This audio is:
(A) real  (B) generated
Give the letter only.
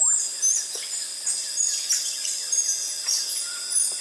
A